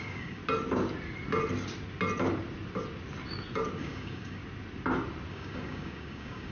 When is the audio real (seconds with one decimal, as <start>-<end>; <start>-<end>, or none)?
0.4-3.8; 4.4-5.3